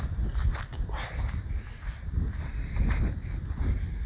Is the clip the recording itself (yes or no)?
yes